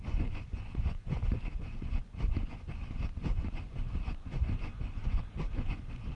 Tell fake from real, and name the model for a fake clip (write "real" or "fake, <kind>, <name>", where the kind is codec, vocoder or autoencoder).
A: fake, vocoder, Vocos